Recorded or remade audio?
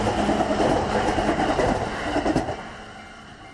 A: recorded